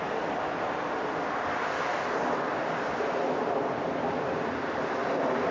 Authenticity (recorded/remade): recorded